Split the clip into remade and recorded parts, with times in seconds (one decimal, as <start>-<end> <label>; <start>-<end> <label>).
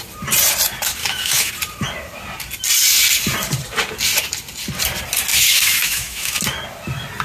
0.0-1.0 recorded; 1.0-1.5 remade; 1.5-5.3 recorded; 5.3-6.4 remade; 6.4-7.2 recorded